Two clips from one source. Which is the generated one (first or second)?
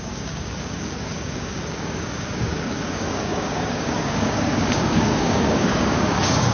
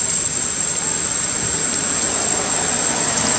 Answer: first